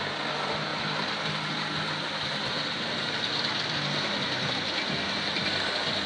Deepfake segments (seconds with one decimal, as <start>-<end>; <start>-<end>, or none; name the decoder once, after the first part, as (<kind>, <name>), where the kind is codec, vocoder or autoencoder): 0.7-4.4 (vocoder, BigVGAN v2)